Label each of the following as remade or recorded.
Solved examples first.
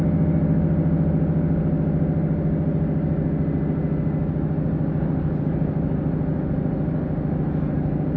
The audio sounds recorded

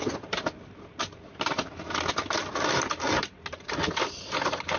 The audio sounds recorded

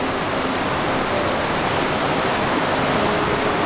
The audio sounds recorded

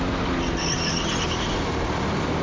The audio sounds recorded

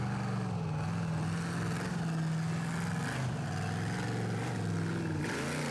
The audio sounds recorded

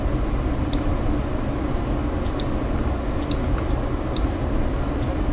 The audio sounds recorded